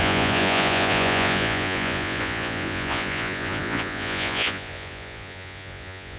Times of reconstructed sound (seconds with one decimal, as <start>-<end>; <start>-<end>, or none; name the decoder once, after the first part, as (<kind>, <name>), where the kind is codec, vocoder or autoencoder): 0.0-6.2 (vocoder, Vocos)